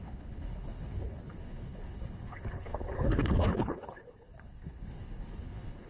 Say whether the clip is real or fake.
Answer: fake